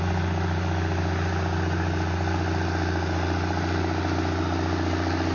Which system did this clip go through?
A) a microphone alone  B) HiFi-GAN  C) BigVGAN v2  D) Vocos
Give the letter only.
A